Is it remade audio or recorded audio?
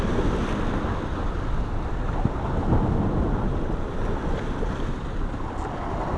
recorded